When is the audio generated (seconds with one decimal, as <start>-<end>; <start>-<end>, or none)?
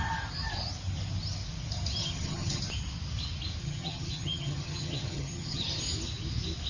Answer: 2.0-2.6; 3.6-5.8